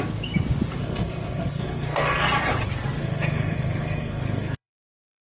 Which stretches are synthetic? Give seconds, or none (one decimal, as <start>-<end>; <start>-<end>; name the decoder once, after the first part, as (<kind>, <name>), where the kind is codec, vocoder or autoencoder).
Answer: 0.8-2.2 (codec, SNAC); 3.0-5.2

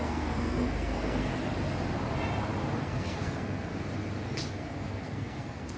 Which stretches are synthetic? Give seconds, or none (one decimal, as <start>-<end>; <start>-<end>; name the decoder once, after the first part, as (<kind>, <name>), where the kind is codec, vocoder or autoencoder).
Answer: 0.0-1.3 (codec, SNAC); 2.8-3.7; 4.5-5.8

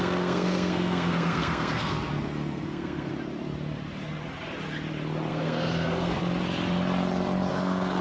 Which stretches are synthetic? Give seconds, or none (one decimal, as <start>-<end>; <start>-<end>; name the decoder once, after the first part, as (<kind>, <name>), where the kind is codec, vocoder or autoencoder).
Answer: 0.0-3.1 (codec, SNAC); 5.3-6.2; 7.5-8.0

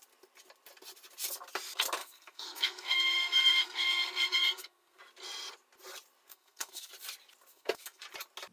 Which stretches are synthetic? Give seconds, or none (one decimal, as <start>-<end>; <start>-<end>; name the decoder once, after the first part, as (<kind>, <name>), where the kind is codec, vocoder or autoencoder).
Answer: 2.0-5.0 (codec, SNAC); 6.3-6.9; 7.5-8.0

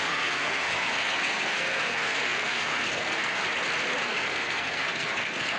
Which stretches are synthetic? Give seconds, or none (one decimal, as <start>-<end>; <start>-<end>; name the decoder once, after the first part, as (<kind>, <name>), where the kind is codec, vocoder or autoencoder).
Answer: 0.0-3.4 (codec, SNAC); 4.0-5.6

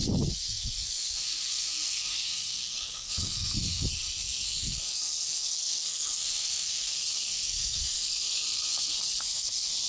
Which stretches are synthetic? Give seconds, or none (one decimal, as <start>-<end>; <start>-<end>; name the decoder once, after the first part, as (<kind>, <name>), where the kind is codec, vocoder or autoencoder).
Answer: 0.0-9.9 (codec, SNAC)

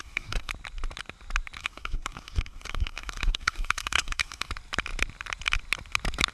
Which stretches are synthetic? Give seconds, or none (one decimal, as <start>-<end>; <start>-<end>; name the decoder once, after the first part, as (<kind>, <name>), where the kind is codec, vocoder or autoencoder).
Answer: 0.0-0.5 (codec, SNAC); 1.6-4.5